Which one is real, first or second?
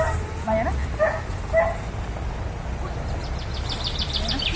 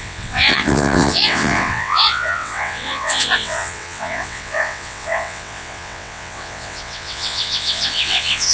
first